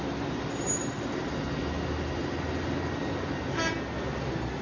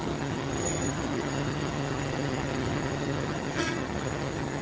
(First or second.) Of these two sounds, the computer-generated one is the second